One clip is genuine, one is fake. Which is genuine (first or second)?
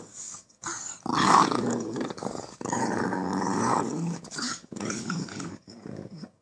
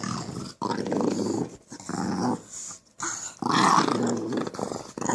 second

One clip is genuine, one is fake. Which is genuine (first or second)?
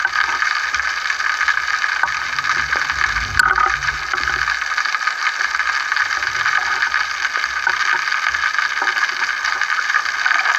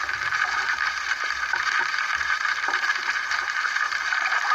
first